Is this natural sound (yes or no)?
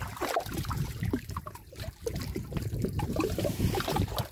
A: no